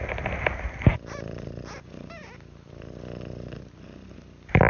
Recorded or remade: recorded